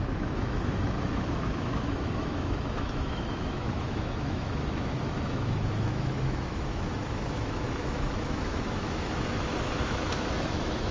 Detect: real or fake fake